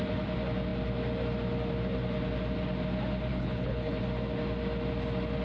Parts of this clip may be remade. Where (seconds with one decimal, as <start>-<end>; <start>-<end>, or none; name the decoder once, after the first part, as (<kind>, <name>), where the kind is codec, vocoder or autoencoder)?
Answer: 3.3-4.0 (codec, HILCodec)